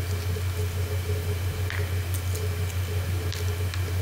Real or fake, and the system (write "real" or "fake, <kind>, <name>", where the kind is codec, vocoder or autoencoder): real